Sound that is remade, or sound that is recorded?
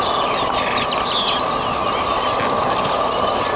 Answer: recorded